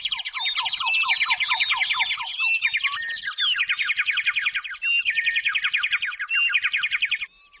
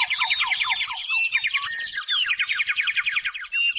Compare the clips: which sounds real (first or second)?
first